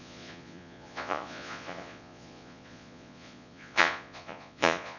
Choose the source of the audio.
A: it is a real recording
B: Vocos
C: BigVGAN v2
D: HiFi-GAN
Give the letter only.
B